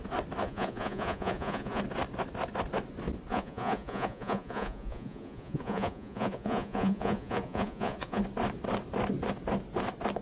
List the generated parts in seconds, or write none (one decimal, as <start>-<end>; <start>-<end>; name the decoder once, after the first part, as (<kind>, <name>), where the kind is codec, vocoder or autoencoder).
0.4-1.8 (vocoder, Vocos); 3.3-8.2